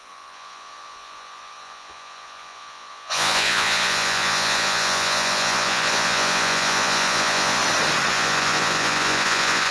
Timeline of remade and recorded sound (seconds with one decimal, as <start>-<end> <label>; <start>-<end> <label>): 0.0-7.6 remade; 7.6-8.1 recorded; 8.1-9.7 remade